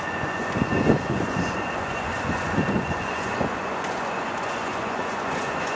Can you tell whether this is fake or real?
fake